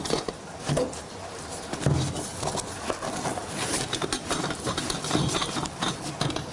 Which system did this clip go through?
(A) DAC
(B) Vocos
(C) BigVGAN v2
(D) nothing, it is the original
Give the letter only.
D